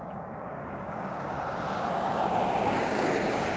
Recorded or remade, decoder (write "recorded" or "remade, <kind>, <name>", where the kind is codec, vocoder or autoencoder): remade, codec, DAC